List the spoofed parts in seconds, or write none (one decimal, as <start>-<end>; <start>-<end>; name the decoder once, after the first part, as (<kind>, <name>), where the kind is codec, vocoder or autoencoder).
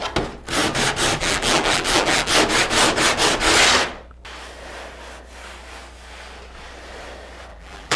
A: 1.2-2.3 (vocoder, BigVGAN v2); 7.5-8.0